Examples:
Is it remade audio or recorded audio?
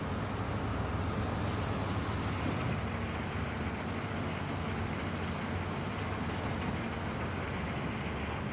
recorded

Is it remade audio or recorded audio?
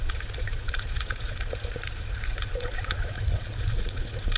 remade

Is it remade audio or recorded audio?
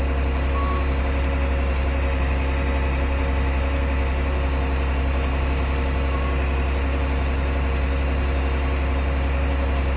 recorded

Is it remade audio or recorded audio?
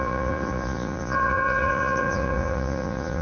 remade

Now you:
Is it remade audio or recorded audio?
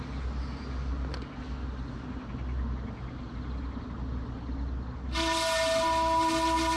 recorded